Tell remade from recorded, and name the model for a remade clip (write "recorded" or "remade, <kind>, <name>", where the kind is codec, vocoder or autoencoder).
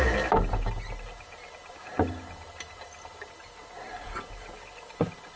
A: recorded